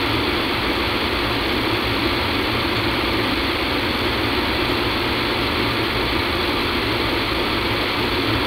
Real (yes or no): yes